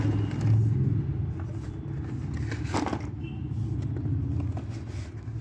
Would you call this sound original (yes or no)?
yes